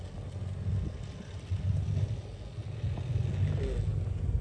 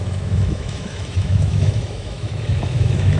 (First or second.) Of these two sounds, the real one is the first